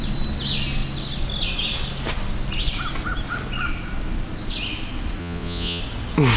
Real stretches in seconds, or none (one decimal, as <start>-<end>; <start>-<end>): 0.0-5.2; 5.8-6.4